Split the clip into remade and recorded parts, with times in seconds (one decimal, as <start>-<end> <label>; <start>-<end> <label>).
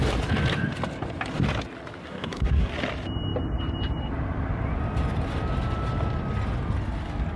0.0-2.0 recorded; 2.0-2.7 remade; 2.7-7.4 recorded